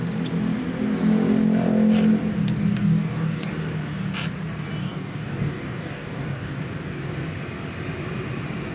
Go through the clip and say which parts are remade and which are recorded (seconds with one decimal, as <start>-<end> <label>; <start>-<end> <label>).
0.0-2.7 recorded; 2.7-3.5 remade; 3.5-4.8 recorded; 4.8-6.6 remade; 6.6-8.7 recorded